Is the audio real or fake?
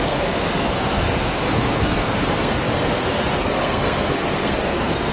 fake